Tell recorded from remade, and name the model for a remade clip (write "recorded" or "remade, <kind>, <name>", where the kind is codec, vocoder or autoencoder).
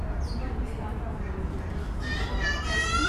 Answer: recorded